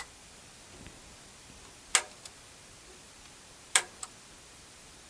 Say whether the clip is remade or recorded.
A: recorded